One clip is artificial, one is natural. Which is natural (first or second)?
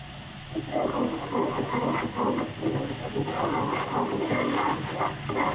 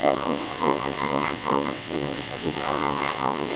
first